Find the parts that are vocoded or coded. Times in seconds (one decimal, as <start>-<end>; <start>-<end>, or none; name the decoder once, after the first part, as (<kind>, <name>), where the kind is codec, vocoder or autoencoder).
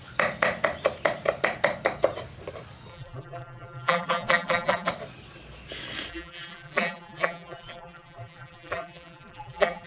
2.9-4.9 (vocoder, BigVGAN v2); 6.1-9.9